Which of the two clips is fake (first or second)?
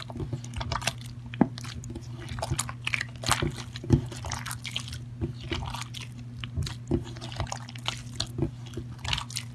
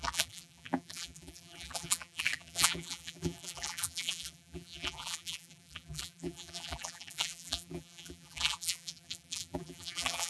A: second